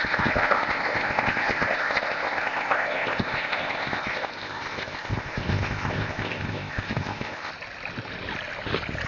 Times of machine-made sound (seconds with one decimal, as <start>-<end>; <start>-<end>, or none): 0.0-7.5